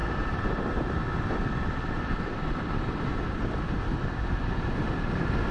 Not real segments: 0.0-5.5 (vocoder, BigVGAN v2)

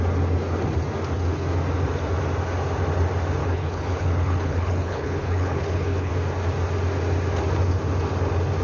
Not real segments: 3.4-6.1 (codec, HILCodec)